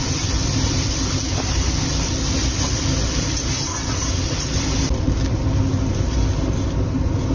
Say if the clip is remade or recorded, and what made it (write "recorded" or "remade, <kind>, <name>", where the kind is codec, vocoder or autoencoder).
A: recorded